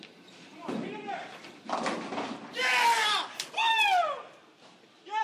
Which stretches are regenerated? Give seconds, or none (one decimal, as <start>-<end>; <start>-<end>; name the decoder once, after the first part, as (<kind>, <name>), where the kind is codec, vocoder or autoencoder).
none